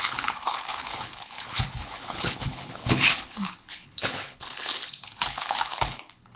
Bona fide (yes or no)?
no